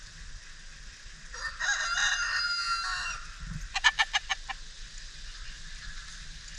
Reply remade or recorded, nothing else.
recorded